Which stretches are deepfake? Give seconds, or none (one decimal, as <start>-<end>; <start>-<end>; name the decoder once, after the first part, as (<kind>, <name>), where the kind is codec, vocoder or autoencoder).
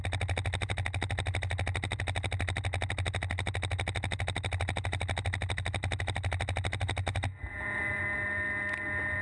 7.5-8.0 (vocoder, Vocos)